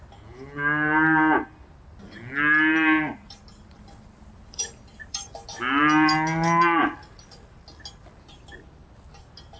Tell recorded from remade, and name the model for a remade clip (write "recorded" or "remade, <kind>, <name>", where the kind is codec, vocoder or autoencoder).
recorded